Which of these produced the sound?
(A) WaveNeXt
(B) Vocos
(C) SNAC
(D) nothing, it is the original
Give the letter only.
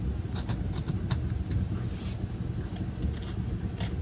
D